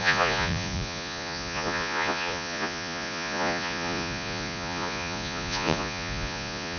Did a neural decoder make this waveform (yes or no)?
yes